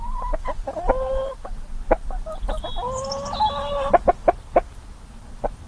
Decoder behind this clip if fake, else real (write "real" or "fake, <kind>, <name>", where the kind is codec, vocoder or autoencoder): real